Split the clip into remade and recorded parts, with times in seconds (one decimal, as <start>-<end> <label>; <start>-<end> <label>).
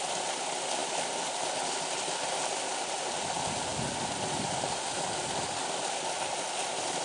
0.0-7.0 recorded